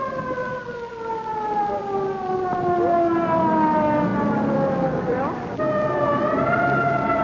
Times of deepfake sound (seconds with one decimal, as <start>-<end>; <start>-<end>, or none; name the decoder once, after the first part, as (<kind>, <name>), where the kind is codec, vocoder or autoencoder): none